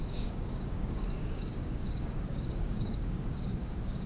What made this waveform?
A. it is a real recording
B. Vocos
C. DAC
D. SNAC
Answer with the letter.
C